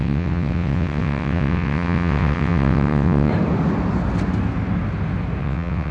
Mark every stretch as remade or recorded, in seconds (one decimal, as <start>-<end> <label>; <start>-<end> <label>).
0.0-3.3 remade; 3.3-5.4 recorded; 5.4-5.9 remade